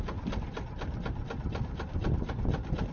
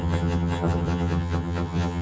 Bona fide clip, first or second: first